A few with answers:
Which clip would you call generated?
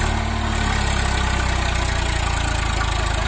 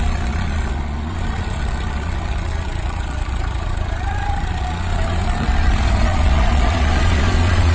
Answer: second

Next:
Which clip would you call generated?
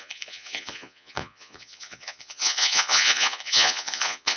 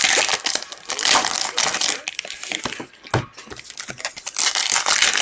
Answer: first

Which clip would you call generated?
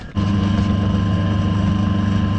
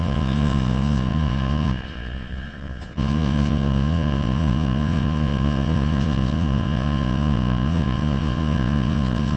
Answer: second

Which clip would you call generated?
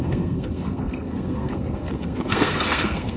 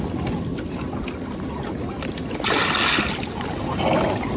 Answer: first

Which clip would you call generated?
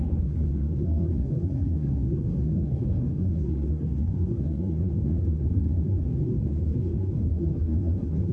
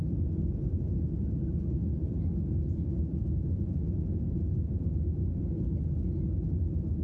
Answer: first